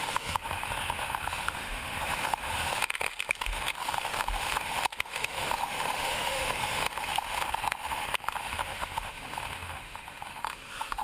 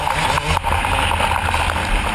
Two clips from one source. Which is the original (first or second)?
second